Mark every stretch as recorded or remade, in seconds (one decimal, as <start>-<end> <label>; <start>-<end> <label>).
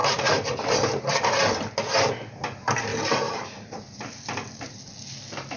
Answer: 0.0-1.0 remade; 1.0-2.9 recorded; 2.9-4.9 remade; 4.9-5.6 recorded